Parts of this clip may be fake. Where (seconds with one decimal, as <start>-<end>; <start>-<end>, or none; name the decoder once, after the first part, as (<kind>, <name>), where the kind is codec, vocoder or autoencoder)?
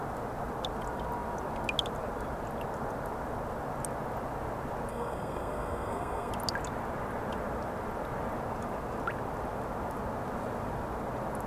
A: 4.9-6.3 (codec, SNAC)